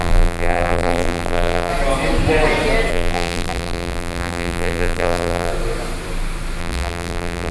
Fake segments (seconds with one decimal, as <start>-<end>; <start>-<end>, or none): 0.0-1.7; 2.9-5.5; 6.6-7.5